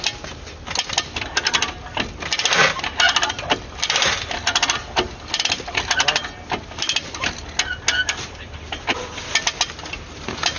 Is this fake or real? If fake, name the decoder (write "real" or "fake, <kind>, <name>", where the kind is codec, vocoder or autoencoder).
real